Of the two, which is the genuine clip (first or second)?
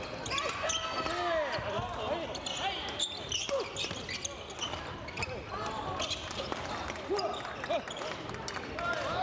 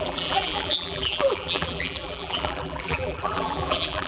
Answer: first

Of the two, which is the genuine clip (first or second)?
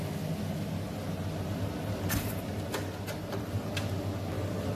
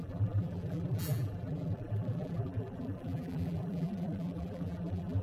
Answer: first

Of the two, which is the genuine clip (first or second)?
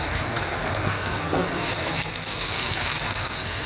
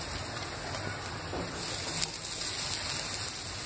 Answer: second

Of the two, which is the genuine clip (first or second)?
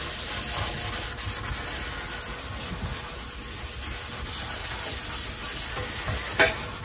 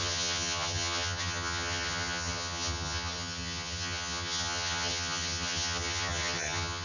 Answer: first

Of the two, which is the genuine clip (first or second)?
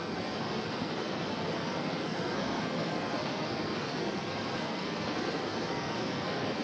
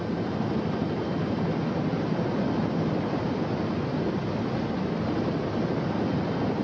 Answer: second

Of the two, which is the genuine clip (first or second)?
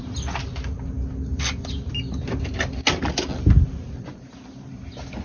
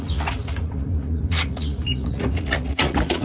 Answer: first